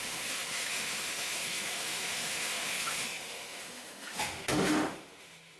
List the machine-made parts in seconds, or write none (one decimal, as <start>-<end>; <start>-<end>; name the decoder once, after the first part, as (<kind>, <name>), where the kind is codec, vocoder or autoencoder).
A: 0.0-5.6 (autoencoder, DAC-VAE)